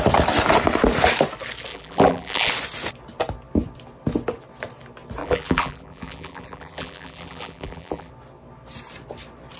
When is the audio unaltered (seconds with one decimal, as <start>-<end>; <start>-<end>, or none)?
0.0-1.7; 2.5-5.2; 8.1-9.6